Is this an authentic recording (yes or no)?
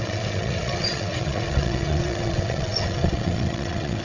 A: no